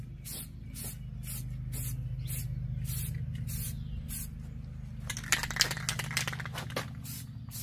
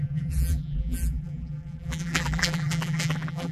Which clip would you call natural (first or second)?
first